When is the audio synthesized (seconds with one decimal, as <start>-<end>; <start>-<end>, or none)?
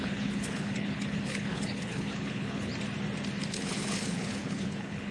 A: 0.0-2.7; 3.4-5.1